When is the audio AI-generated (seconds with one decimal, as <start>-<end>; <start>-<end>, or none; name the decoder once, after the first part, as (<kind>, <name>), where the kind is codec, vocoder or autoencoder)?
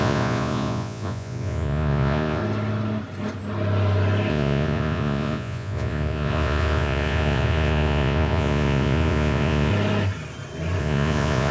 0.0-2.4 (vocoder, Vocos); 4.3-9.7; 10.8-11.5